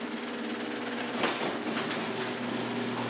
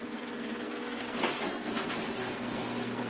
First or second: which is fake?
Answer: second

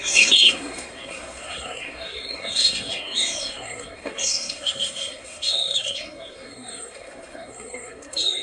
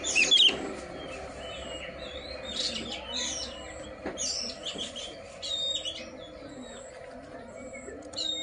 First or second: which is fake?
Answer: first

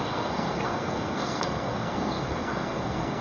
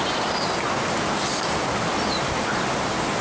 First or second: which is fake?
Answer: first